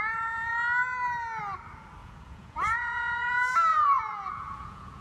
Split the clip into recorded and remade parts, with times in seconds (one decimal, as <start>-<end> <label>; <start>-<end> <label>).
0.0-2.0 recorded; 2.0-3.3 remade; 3.3-3.7 recorded; 3.7-5.0 remade